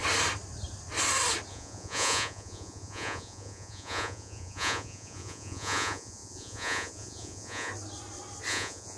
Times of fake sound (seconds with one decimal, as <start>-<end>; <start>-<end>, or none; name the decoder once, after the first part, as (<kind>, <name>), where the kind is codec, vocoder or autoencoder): 1.5-7.7 (vocoder, Vocos); 8.5-9.0